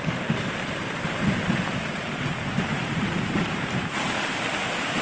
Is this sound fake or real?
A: fake